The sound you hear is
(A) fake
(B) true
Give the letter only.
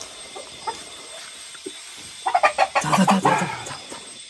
B